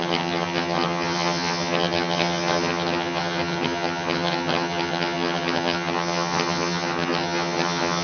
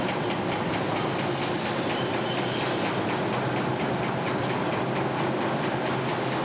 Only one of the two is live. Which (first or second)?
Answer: second